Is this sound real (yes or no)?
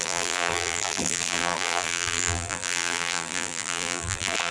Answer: no